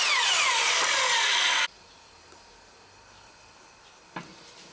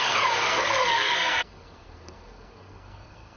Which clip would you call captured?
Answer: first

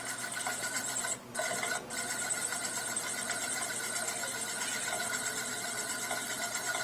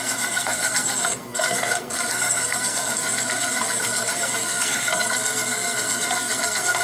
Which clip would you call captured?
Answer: first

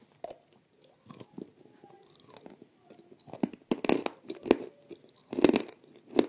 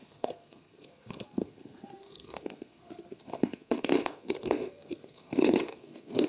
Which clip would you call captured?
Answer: first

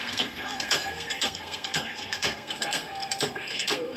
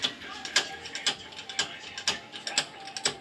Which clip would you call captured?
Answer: second